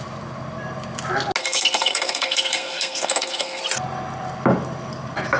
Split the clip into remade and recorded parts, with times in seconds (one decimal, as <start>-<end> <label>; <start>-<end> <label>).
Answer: 0.0-1.4 recorded; 1.4-3.6 remade; 3.6-5.4 recorded